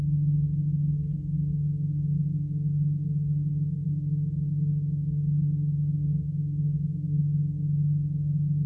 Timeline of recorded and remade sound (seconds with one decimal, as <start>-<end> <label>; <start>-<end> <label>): 0.0-8.7 recorded